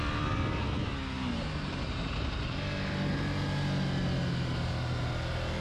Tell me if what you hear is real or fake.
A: real